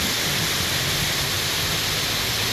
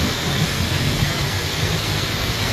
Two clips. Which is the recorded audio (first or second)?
first